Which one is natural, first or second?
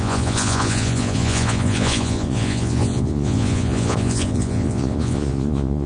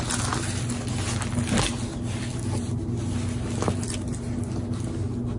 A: second